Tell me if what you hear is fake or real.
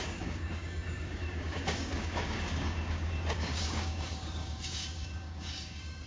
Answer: fake